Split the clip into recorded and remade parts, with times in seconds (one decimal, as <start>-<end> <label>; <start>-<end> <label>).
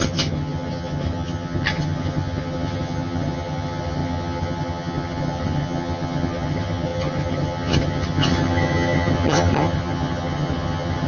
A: 0.0-11.1 remade